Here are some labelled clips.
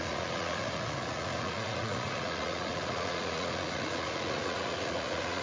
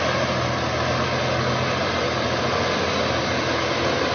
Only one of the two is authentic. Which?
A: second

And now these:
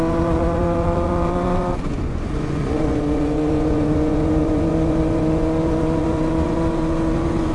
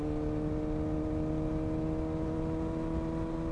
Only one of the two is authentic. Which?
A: second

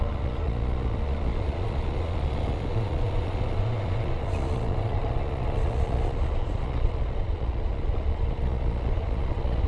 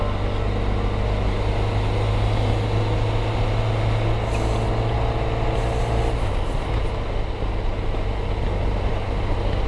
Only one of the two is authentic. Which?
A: second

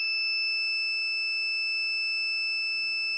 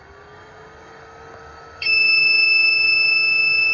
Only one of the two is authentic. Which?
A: first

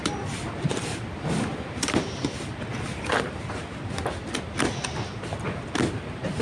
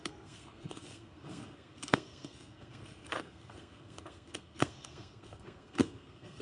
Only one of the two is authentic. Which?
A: first